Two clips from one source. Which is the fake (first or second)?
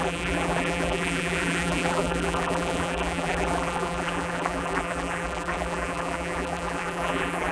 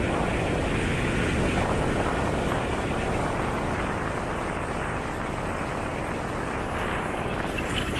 first